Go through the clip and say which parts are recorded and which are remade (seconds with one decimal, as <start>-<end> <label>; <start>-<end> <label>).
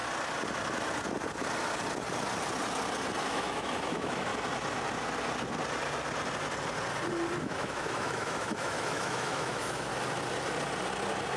0.0-3.2 recorded; 3.2-4.3 remade; 4.3-7.4 recorded; 7.4-9.9 remade; 9.9-11.4 recorded